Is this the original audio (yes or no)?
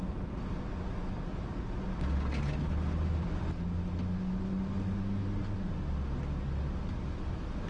yes